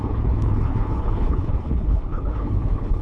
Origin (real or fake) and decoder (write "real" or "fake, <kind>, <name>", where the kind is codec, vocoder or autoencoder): fake, codec, HILCodec